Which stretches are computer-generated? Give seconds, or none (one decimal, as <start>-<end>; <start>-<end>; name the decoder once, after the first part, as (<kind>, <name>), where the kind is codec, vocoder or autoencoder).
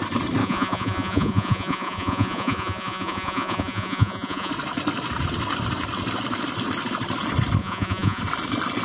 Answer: 0.4-4.5 (vocoder, Vocos); 7.6-8.2